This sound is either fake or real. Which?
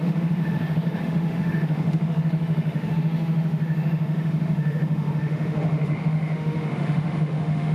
fake